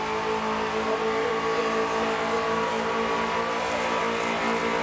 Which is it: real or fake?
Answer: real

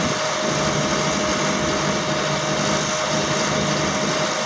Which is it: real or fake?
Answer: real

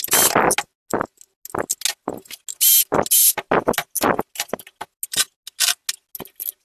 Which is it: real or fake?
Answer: real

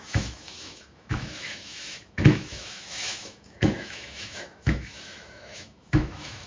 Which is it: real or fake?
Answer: fake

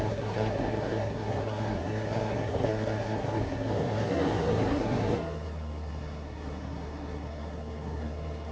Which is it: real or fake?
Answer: fake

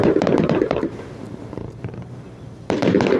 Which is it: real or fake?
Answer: fake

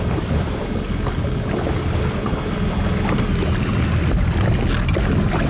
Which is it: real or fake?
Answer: real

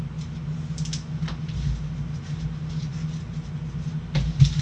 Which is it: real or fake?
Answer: real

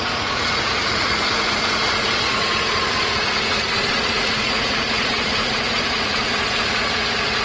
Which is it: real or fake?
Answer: fake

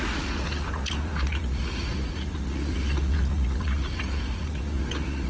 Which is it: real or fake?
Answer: fake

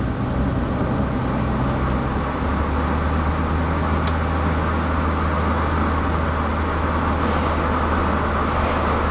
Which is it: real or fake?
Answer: real